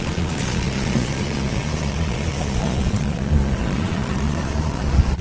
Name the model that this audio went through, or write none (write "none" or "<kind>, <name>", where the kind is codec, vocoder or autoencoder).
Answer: vocoder, Vocos